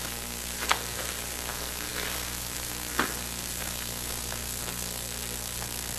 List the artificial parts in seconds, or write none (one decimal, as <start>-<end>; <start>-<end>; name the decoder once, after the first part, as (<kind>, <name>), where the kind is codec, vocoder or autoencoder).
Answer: 0.0-6.0 (codec, SNAC)